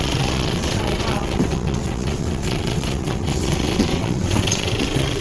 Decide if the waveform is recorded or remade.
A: remade